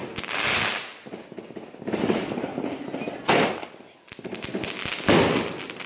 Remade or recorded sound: recorded